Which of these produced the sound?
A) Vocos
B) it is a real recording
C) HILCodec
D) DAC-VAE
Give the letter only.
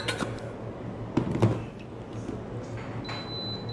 B